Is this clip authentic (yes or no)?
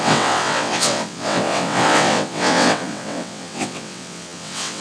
no